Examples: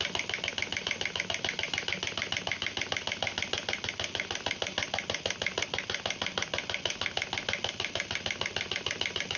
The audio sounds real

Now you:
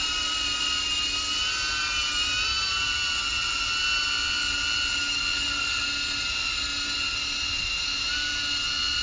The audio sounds real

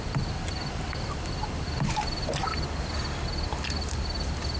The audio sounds real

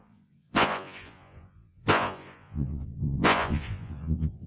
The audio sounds fake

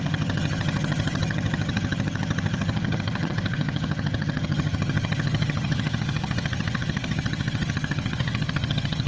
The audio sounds fake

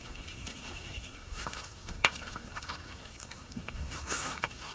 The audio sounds fake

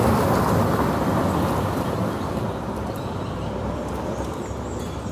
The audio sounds fake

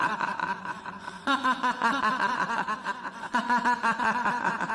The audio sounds fake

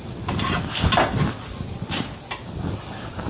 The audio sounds real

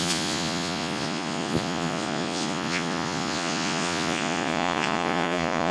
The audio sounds fake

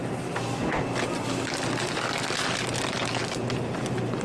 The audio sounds real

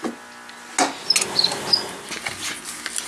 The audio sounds real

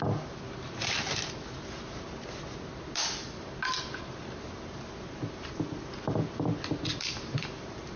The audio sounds real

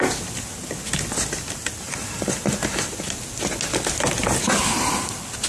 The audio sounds real